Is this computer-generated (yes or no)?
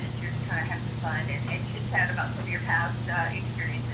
no